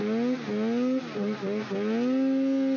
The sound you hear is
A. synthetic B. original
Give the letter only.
B